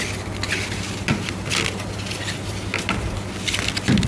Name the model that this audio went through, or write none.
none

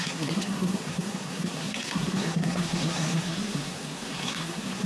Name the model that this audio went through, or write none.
codec, SNAC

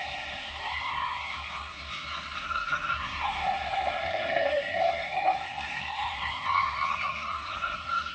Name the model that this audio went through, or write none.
codec, SNAC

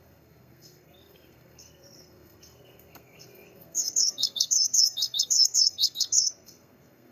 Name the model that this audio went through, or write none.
codec, SNAC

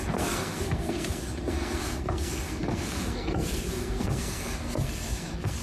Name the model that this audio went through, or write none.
codec, SNAC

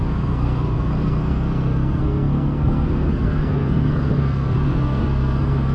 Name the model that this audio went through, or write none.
codec, SNAC